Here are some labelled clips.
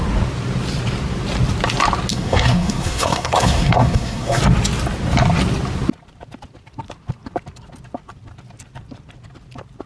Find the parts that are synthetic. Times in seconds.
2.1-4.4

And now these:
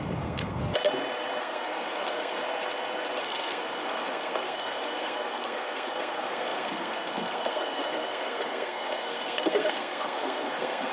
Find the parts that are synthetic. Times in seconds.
0.0-0.6; 1.4-2.4; 3.2-10.9